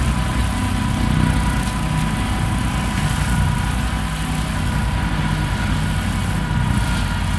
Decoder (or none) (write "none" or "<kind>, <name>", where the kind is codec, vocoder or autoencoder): none